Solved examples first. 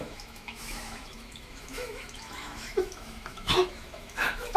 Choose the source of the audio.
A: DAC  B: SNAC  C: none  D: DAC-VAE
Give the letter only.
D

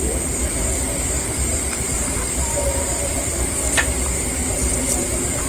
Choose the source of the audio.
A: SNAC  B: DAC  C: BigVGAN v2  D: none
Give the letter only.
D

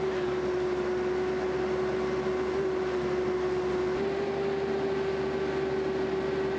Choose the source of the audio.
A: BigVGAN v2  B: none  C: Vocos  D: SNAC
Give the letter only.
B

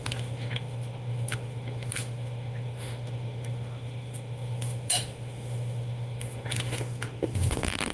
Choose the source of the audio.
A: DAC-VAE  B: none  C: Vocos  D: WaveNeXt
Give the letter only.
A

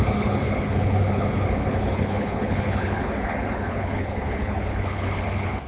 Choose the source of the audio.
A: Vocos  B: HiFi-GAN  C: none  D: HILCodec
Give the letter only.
D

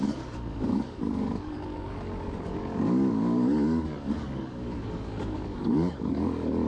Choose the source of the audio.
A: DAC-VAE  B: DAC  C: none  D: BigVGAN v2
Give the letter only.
B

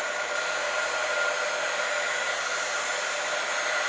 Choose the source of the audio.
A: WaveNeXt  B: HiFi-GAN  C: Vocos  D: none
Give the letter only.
D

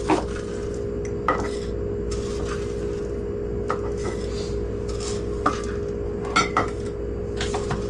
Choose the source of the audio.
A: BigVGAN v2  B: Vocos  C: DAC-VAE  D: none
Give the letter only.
D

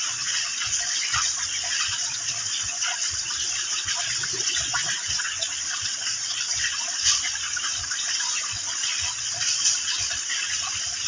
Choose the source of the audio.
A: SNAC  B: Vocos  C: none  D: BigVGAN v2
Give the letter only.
B